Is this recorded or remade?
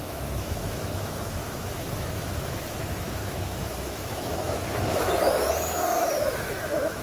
remade